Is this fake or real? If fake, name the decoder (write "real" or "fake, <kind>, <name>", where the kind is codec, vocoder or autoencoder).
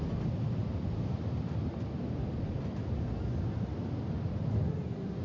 real